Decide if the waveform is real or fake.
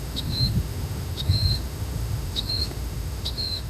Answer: fake